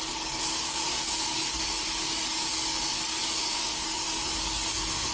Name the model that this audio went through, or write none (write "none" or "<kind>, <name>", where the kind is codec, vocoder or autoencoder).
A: codec, DAC